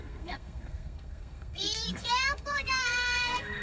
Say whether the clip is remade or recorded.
remade